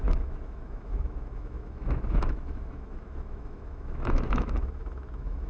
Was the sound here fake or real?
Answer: fake